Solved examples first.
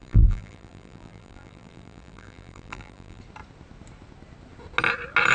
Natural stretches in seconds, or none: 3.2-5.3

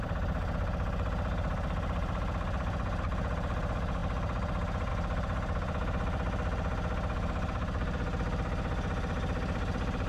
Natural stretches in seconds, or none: none

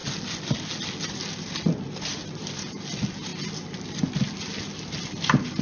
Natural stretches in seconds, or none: 0.0-5.6

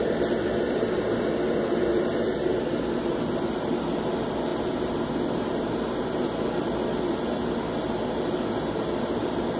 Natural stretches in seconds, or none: 0.0-9.6

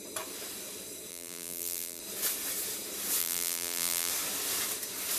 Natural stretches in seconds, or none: 0.0-1.1; 2.0-3.2; 4.1-5.2

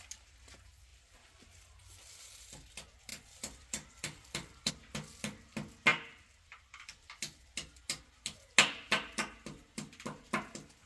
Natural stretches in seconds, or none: 0.0-0.9; 2.7-3.1; 4.7-5.9; 6.9-10.9